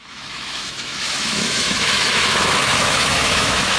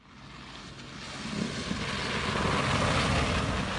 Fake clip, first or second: first